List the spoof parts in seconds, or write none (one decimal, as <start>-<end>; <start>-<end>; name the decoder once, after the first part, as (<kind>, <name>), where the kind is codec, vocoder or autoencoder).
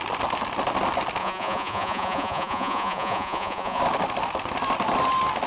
1.2-3.8 (vocoder, Vocos)